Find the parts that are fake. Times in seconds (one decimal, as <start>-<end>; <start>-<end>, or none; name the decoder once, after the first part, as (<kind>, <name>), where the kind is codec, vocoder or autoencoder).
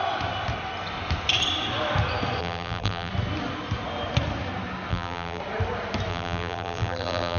2.4-3.1 (vocoder, BigVGAN v2); 4.9-5.4; 6.1-7.4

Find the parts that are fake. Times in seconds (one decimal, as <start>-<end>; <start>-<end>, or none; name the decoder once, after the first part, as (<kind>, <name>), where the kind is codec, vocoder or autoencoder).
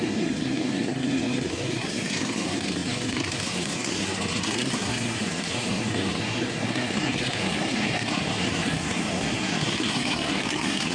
0.0-10.9 (codec, SNAC)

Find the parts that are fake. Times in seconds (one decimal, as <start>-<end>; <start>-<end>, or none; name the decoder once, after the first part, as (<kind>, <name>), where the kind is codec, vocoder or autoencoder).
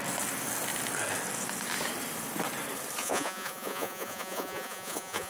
3.0-5.3 (vocoder, Vocos)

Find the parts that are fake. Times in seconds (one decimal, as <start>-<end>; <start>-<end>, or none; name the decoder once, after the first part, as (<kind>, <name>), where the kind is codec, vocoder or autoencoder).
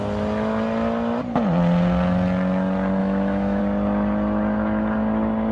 3.0-3.6 (autoencoder, DAC-VAE)